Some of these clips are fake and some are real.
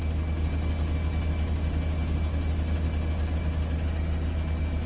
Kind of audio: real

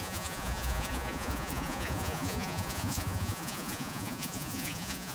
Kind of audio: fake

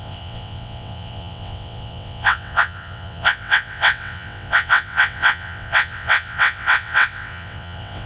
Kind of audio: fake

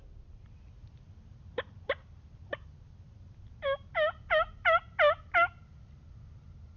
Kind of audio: real